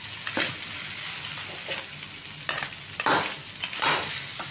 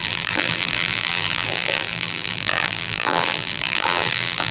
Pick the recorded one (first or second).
first